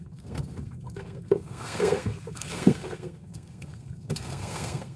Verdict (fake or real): fake